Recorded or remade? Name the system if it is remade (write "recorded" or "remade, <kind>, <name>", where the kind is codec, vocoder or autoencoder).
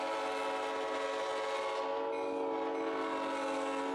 recorded